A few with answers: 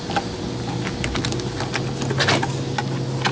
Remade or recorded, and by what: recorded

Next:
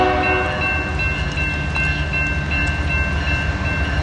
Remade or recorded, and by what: recorded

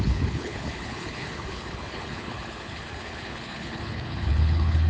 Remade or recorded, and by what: remade, codec, HILCodec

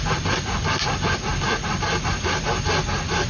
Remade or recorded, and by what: recorded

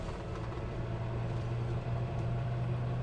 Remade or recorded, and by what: remade, vocoder, BigVGAN v2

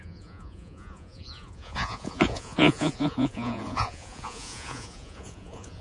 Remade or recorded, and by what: remade, vocoder, Vocos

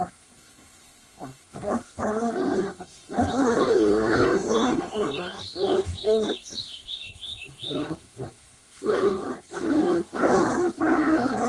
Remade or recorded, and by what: remade, codec, SNAC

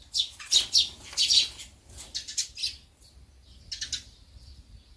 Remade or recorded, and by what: recorded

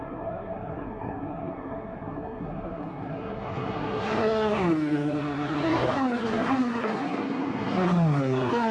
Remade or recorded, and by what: remade, codec, SNAC